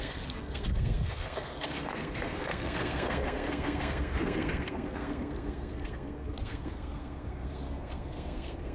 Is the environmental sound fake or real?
fake